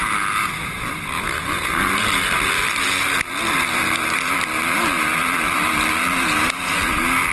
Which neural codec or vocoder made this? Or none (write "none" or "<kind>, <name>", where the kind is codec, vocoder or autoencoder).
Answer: none